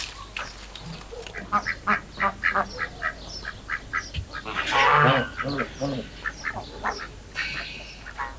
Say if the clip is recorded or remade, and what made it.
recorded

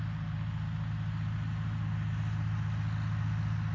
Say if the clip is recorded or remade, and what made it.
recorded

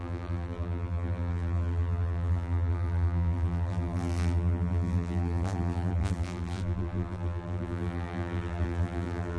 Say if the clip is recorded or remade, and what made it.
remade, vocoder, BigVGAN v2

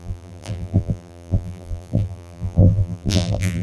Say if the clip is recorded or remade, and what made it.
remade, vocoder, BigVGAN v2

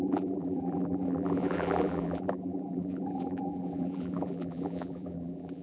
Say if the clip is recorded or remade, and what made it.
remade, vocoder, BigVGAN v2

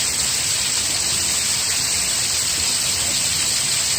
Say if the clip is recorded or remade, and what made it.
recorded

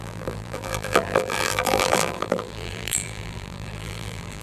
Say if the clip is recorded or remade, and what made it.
remade, vocoder, BigVGAN v2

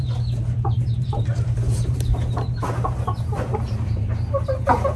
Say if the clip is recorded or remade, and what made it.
remade, vocoder, BigVGAN v2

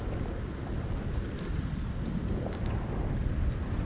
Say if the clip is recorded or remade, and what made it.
recorded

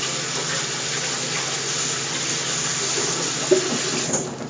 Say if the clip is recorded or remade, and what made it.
recorded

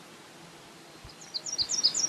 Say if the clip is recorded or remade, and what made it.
recorded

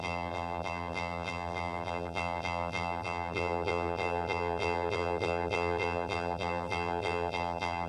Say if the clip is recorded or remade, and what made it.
remade, vocoder, BigVGAN v2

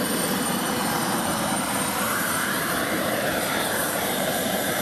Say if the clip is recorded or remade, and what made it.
remade, vocoder, BigVGAN v2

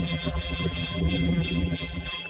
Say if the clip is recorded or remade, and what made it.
remade, vocoder, BigVGAN v2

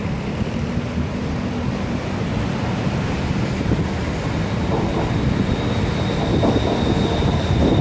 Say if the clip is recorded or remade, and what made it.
recorded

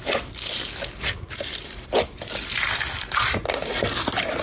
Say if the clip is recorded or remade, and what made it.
recorded